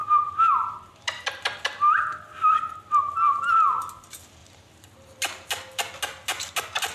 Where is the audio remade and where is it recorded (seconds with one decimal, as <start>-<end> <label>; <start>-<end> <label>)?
0.0-6.9 recorded